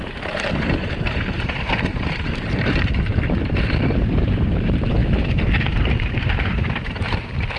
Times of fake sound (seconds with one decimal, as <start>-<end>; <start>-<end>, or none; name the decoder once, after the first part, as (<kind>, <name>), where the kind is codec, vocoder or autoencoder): 0.0-5.0 (vocoder, BigVGAN v2); 5.7-7.6